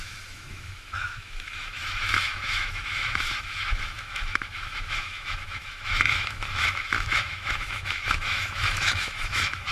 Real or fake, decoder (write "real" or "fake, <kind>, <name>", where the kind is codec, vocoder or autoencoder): fake, autoencoder, DAC-VAE